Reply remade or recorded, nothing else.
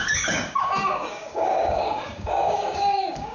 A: remade